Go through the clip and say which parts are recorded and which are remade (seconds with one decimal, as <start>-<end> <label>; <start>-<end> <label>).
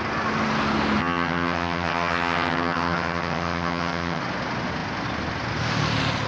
0.0-1.0 recorded; 1.0-4.2 remade; 4.2-6.3 recorded